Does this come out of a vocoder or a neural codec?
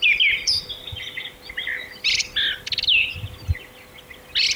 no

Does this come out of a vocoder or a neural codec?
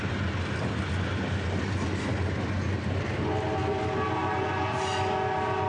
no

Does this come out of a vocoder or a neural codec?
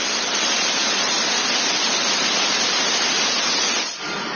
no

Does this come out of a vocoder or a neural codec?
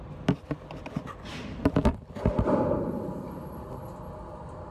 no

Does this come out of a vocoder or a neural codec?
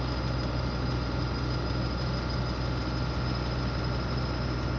no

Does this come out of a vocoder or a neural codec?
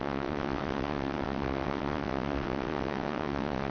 yes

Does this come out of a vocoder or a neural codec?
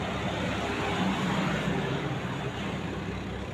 no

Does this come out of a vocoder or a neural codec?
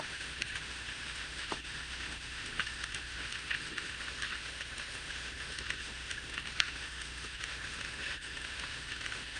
yes